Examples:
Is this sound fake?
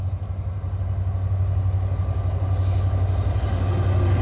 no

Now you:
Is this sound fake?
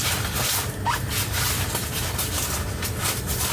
no